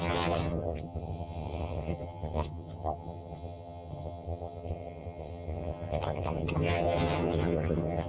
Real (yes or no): no